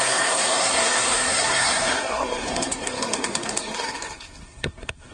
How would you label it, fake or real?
fake